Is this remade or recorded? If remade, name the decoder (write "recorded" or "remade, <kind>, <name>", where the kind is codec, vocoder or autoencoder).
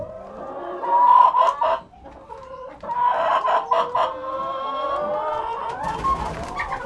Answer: recorded